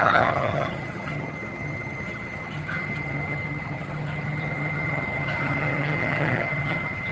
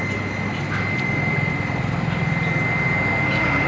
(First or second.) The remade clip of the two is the first